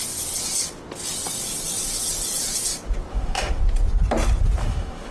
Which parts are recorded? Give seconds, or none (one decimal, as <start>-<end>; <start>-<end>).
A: 0.0-3.1; 3.6-4.6